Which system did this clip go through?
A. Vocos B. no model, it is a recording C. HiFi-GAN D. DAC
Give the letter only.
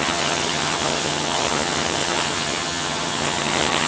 C